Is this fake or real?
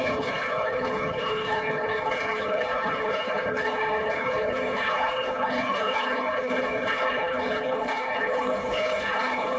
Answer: fake